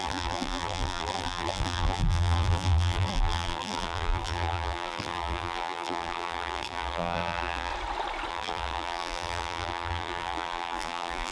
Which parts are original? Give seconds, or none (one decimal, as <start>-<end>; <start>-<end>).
7.7-8.3